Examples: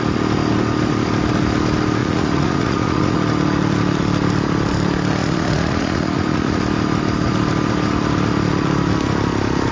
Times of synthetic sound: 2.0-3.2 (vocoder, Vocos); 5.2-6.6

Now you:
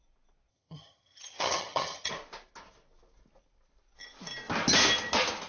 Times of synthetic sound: 0.5-2.1 (vocoder, HiFi-GAN)

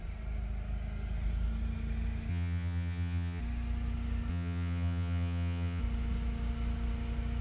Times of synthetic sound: 2.3-3.4 (vocoder, HiFi-GAN); 4.3-5.8

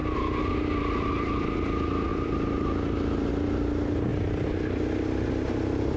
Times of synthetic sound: 2.1-3.3 (vocoder, BigVGAN v2)